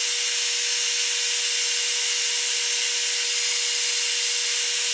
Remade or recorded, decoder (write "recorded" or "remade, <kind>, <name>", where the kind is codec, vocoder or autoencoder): recorded